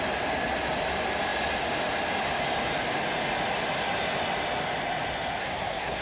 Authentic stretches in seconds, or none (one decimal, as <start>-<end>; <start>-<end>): 0.0-5.4